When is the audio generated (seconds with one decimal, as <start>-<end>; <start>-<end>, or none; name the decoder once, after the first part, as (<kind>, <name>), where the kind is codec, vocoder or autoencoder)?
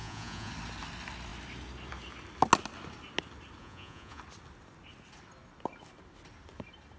0.0-0.5 (vocoder, Vocos); 3.6-4.2